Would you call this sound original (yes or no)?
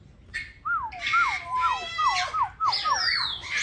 yes